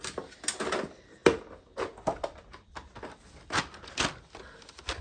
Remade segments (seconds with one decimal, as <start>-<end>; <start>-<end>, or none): none